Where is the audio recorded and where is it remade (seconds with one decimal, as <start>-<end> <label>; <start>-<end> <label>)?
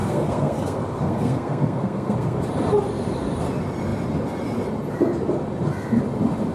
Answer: 0.0-2.4 remade; 2.4-6.5 recorded